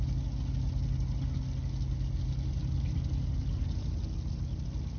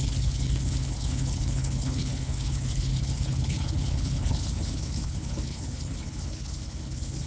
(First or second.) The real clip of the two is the first